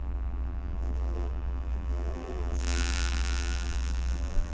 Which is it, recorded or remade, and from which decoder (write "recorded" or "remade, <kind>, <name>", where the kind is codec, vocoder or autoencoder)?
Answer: remade, vocoder, BigVGAN v2